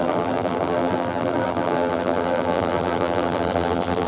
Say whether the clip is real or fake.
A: fake